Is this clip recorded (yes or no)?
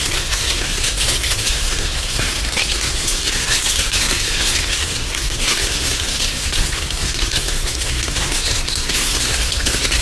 no